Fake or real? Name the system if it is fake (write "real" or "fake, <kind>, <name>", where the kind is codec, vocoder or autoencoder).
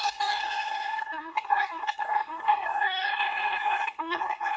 fake, codec, SNAC